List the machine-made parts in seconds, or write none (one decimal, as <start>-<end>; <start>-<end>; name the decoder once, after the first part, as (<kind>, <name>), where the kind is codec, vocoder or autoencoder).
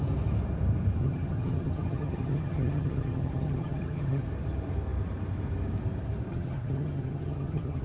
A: 1.0-4.2 (vocoder, HiFi-GAN); 6.3-7.8